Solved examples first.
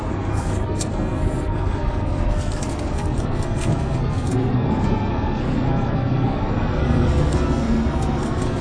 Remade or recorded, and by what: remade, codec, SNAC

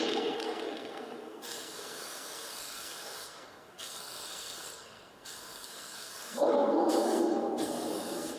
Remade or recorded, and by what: remade, codec, SNAC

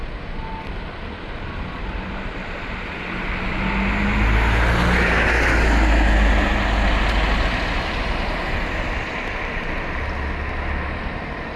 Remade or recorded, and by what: recorded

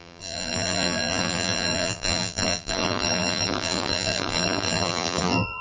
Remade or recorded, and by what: remade, vocoder, BigVGAN v2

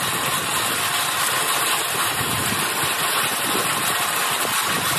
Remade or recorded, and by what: recorded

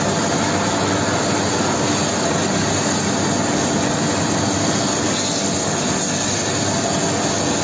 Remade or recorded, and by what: recorded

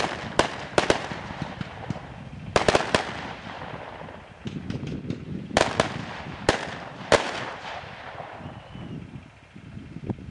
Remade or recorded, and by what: remade, vocoder, BigVGAN v2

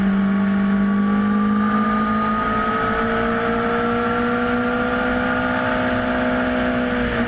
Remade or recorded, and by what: recorded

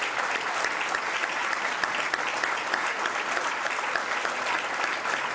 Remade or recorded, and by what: recorded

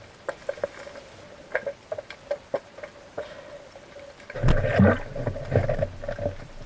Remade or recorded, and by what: recorded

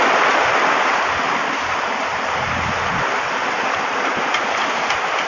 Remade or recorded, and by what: recorded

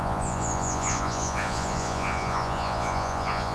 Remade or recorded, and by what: remade, vocoder, Vocos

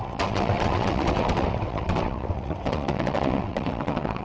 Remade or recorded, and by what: remade, vocoder, WaveNeXt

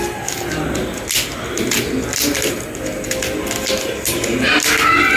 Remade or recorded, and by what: recorded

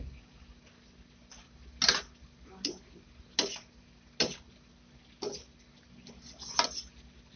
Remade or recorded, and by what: recorded